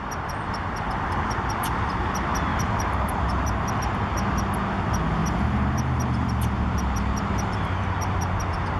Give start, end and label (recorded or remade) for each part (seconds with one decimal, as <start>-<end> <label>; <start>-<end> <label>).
0.0-2.5 recorded; 2.5-3.7 remade; 3.7-5.2 recorded; 5.2-8.4 remade; 8.4-8.8 recorded